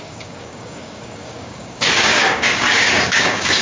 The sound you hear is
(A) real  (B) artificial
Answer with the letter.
B